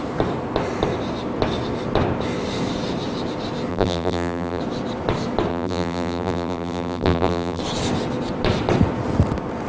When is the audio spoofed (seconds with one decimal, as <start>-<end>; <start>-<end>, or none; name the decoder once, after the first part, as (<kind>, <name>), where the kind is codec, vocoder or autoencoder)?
3.7-4.6 (vocoder, BigVGAN v2); 5.5-7.6